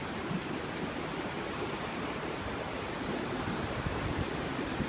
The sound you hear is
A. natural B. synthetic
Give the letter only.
B